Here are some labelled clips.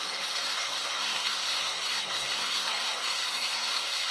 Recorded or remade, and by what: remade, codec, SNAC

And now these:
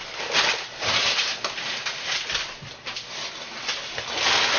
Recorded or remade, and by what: recorded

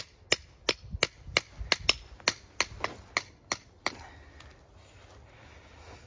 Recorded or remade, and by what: recorded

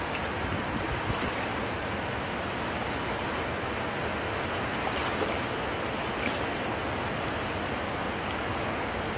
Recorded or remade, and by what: recorded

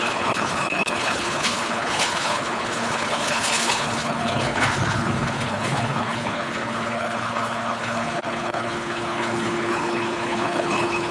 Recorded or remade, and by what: remade, codec, HILCodec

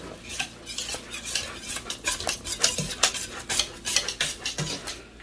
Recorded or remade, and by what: recorded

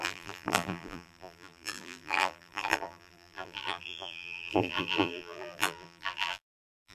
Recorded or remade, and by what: remade, vocoder, BigVGAN v2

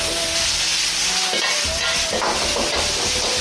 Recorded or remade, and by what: recorded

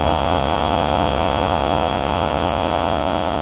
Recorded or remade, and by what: remade, vocoder, Vocos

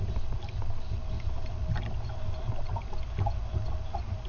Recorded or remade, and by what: recorded